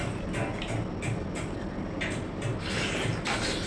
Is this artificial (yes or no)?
no